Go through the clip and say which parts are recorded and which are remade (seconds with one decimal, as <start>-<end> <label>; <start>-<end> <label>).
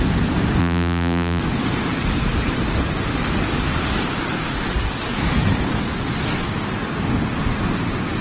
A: 0.0-0.6 recorded; 0.6-1.4 remade; 1.4-8.2 recorded